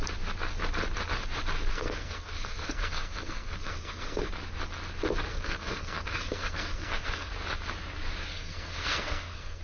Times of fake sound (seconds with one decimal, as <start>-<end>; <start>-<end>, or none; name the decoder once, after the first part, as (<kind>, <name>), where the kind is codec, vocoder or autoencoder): 1.7-4.3 (codec, SNAC); 5.3-7.3; 8.3-9.6